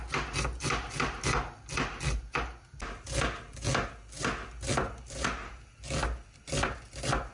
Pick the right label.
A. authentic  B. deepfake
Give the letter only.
A